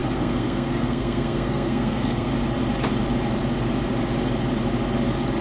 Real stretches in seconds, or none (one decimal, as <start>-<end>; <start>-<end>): 2.3-5.4